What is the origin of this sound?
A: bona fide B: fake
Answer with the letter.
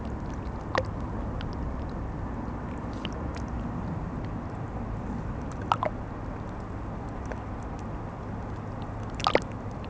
A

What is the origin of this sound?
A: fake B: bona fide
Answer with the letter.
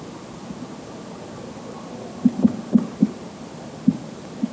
B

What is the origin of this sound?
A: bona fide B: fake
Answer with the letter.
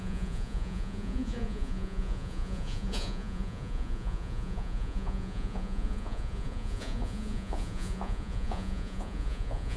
B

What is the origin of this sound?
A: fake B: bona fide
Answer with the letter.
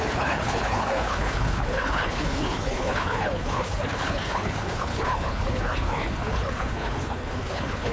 A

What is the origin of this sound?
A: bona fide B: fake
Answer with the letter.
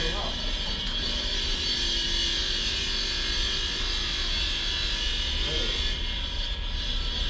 A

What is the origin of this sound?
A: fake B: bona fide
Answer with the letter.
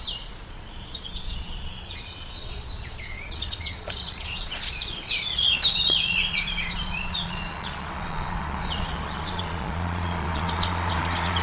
A